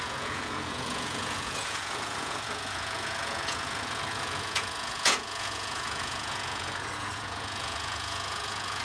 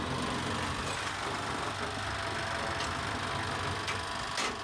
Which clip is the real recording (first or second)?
second